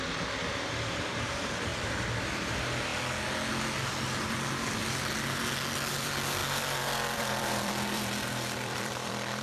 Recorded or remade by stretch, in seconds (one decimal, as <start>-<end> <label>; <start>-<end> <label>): 0.0-2.9 remade; 2.9-4.3 recorded; 4.3-4.8 remade; 4.8-5.9 recorded; 5.9-9.4 remade